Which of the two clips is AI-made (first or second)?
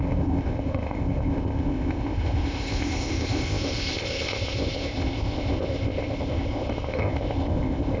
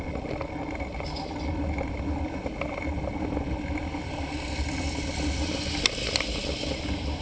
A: first